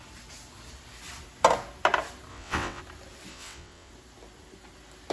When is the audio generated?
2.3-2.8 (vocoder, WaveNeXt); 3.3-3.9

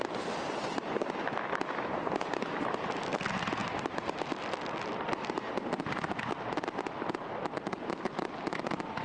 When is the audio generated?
none

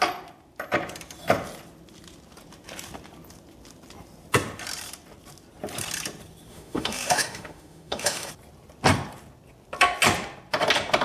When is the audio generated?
6.5-8.3 (autoencoder, DAC-VAE)

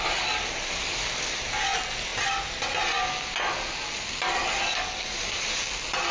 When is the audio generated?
none

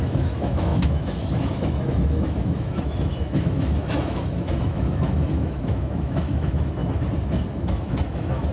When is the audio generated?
0.0-6.8 (autoencoder, DAC-VAE); 7.5-8.5

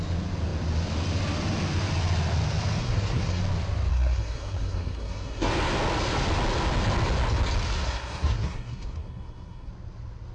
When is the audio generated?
2.8-3.4 (codec, SNAC); 3.9-5.5; 7.8-9.7